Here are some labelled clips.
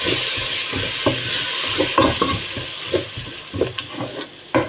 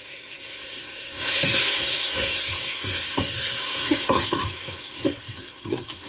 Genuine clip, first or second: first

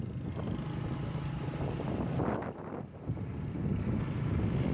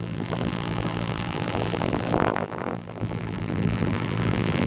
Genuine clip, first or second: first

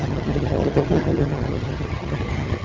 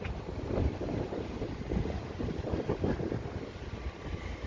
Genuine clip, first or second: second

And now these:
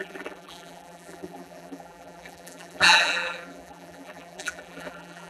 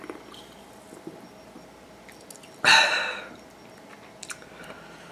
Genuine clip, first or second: second